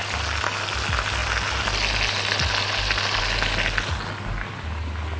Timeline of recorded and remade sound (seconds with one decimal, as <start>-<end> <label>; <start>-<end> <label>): 0.0-5.2 recorded